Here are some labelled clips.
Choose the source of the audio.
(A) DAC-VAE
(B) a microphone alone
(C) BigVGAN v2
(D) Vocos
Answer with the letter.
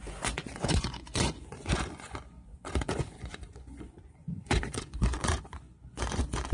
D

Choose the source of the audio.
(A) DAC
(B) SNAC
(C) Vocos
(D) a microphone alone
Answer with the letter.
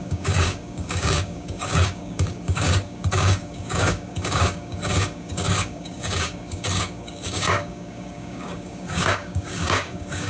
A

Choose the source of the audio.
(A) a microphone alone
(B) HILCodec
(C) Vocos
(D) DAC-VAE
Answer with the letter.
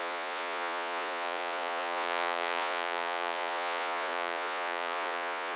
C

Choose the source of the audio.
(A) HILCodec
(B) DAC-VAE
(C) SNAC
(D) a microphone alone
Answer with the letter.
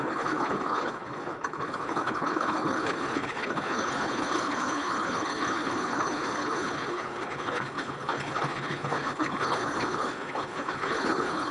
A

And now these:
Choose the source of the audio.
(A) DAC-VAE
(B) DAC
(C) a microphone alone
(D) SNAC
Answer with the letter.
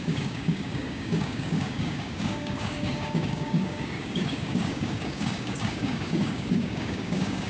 B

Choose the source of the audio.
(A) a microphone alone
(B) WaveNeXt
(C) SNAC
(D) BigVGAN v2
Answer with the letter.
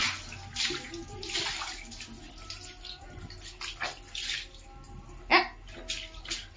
A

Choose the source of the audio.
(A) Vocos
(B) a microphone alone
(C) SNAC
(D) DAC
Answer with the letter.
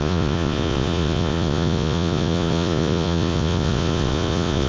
A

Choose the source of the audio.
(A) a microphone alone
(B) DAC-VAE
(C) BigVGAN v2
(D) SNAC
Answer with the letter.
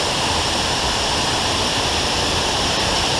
C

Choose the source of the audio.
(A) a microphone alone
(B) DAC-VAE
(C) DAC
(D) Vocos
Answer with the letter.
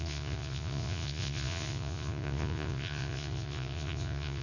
D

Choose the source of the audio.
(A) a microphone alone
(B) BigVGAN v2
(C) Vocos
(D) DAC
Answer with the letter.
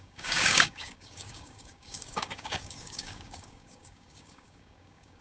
D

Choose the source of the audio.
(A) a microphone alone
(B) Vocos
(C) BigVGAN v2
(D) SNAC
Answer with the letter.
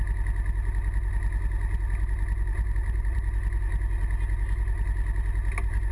A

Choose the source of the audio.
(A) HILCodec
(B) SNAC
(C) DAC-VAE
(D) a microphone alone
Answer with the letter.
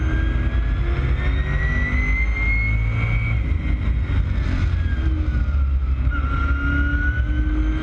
D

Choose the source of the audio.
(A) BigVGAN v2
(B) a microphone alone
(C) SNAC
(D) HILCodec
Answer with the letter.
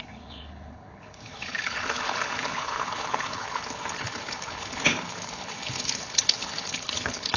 D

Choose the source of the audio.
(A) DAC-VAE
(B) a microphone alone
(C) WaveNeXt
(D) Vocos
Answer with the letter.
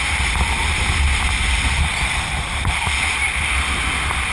B